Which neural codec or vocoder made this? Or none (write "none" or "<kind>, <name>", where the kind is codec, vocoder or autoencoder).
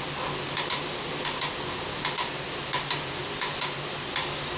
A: none